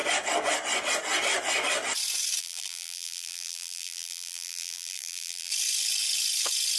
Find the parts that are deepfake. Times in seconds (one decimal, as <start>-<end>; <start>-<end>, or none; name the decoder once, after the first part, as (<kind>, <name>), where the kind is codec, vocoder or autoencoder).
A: 2.4-5.5 (vocoder, BigVGAN v2)